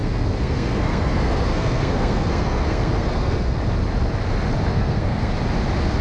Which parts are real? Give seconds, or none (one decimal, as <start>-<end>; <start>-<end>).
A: 3.6-4.7; 5.3-6.0